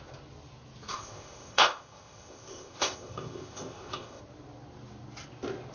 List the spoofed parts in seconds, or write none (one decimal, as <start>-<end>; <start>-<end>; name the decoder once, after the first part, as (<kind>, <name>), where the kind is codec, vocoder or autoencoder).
0.9-4.2 (codec, ZipCodec)